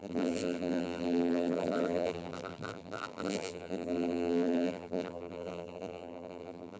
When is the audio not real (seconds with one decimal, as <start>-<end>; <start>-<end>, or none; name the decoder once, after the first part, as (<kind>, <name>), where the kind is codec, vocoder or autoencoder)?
0.0-6.8 (vocoder, BigVGAN v2)